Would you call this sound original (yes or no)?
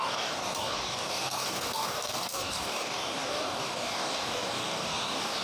no